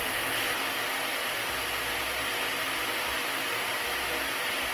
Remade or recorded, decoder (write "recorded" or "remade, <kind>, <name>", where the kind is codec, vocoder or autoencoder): recorded